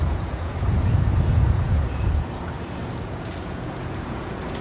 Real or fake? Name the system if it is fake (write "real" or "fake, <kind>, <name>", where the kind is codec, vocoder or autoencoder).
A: fake, vocoder, Vocos